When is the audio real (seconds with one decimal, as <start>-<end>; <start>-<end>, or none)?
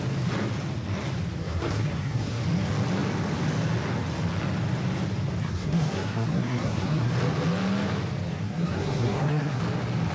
0.0-1.4; 2.4-5.4; 7.1-8.3; 9.6-10.1